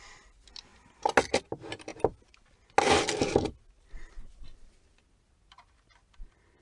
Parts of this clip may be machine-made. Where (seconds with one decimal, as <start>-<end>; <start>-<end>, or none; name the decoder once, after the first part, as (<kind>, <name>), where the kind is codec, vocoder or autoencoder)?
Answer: none